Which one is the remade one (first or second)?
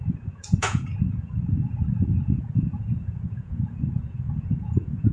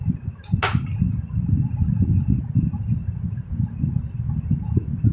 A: first